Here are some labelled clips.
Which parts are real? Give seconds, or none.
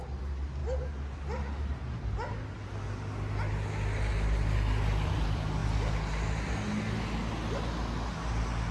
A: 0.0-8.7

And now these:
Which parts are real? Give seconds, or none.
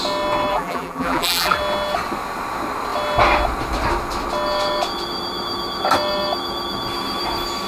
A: 0.0-0.5; 1.6-7.7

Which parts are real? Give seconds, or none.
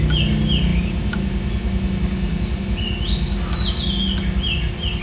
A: 0.0-5.0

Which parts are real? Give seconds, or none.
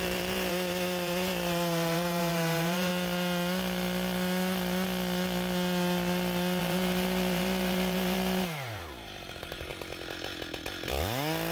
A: 2.9-6.6; 9.7-11.5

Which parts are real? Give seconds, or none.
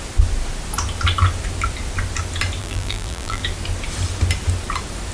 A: 0.0-2.6; 3.4-5.1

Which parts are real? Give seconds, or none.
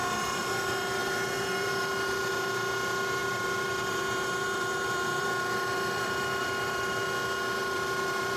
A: 0.0-1.0; 1.7-3.2; 6.8-7.6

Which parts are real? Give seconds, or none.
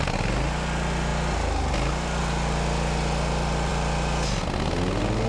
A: 0.0-5.3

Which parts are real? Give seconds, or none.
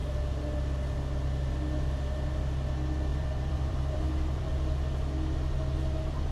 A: 0.0-3.1; 4.5-6.3